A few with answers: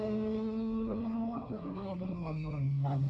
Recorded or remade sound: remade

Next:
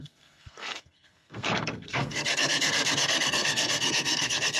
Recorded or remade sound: remade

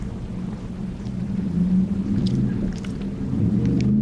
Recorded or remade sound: recorded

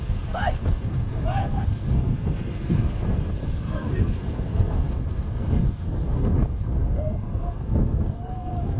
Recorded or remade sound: remade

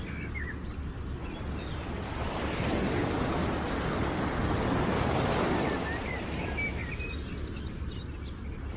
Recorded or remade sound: recorded